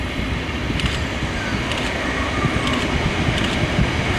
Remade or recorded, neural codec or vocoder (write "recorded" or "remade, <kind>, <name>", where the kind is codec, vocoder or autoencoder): recorded